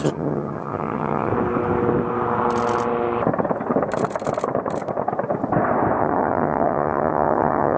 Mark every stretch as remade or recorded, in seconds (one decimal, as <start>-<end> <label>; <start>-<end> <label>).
0.0-1.3 remade; 1.3-6.0 recorded; 6.0-7.8 remade